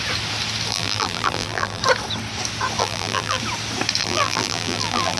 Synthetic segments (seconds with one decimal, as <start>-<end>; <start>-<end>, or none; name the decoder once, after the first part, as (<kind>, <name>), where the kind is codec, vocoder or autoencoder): 0.7-1.8 (vocoder, BigVGAN v2); 2.8-3.4; 4.0-5.2